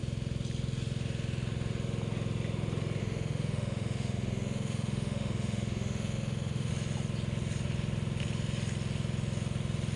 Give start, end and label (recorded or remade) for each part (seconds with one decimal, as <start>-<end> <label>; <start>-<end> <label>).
0.0-3.0 recorded; 3.0-6.7 remade; 6.7-10.0 recorded